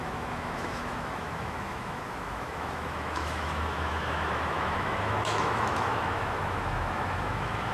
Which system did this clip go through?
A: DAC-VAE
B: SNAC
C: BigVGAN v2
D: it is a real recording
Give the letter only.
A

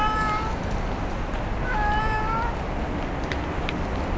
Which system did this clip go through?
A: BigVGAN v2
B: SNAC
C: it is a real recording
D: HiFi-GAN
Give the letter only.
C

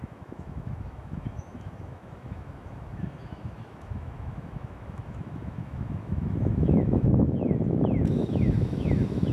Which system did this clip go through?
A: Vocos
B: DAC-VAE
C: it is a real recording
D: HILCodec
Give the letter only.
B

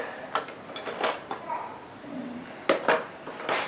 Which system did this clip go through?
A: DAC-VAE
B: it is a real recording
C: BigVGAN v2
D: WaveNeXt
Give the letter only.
B